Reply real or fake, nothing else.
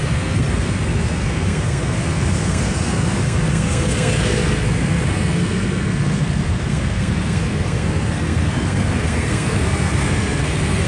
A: fake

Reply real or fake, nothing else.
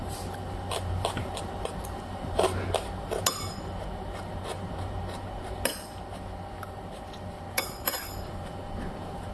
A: fake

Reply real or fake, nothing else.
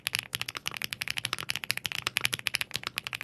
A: real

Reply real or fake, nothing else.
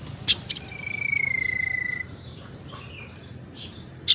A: fake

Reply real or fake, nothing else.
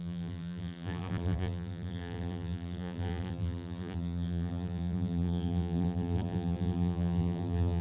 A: fake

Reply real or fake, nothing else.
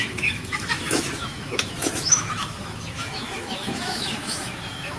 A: fake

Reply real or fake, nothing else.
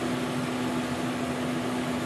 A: real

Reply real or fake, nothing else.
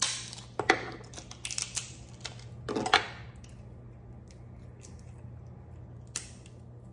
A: real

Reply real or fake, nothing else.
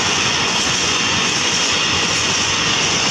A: fake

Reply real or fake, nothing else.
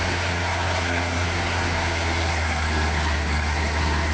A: fake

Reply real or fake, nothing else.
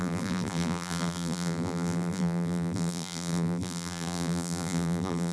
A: fake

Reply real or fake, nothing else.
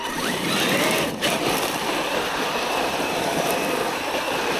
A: fake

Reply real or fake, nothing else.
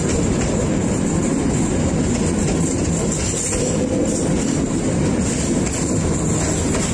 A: real